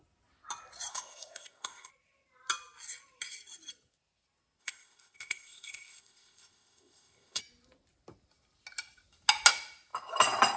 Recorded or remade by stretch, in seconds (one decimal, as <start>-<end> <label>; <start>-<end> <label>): 0.0-0.9 recorded; 0.9-1.9 remade; 1.9-4.6 recorded; 4.6-7.4 remade; 7.4-10.6 recorded